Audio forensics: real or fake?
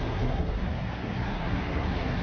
fake